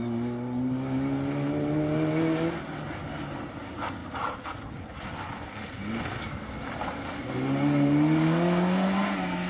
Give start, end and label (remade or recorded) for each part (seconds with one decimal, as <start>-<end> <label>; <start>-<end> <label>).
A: 0.0-9.5 recorded